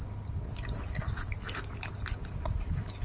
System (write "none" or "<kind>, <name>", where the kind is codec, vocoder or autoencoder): none